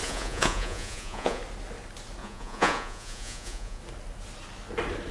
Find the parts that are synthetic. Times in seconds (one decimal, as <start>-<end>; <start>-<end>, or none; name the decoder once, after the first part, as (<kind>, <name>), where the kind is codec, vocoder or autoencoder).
0.0-1.4 (vocoder, Vocos); 2.2-3.8